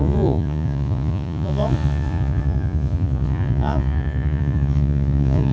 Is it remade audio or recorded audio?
remade